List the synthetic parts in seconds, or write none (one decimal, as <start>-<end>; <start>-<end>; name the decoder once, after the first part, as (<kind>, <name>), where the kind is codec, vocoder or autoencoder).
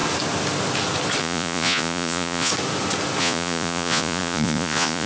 1.2-2.5 (vocoder, Vocos); 3.2-5.1